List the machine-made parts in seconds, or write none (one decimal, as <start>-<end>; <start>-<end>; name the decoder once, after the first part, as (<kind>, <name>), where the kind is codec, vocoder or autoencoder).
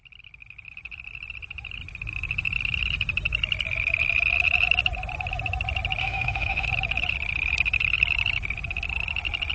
6.0-6.7 (autoencoder, DAC-VAE)